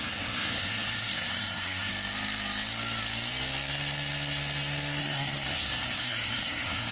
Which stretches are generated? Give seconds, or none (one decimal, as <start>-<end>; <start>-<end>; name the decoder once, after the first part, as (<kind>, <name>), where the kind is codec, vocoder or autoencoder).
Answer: 0.0-1.9 (codec, SNAC); 5.0-6.9